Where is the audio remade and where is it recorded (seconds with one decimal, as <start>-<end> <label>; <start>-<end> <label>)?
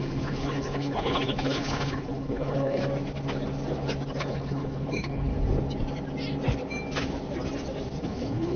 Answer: 0.0-2.8 remade; 2.8-4.2 recorded; 4.2-5.3 remade; 5.3-8.0 recorded; 8.0-8.6 remade